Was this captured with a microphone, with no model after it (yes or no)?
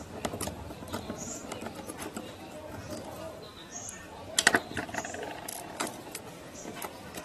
yes